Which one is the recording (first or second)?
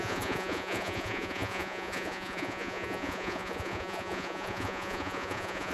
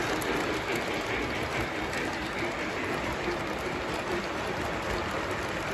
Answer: second